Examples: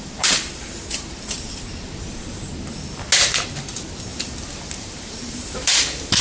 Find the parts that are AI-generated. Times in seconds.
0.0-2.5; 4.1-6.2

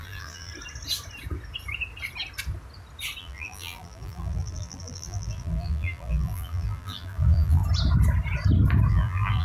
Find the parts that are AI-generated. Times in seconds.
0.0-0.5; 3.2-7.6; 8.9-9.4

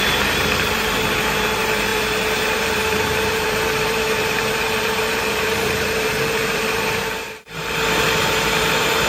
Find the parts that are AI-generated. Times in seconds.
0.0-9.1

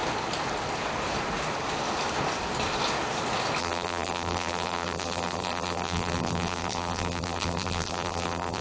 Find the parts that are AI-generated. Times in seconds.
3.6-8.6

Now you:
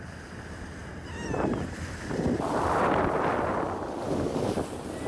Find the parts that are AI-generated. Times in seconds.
0.8-2.8

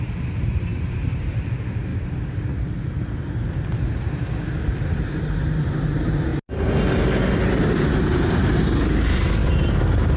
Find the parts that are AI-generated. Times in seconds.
0.0-6.3; 7.6-10.2

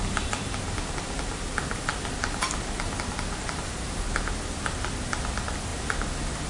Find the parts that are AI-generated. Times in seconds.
none

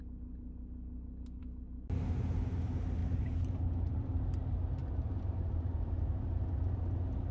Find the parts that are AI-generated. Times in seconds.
3.0-4.2; 4.8-6.3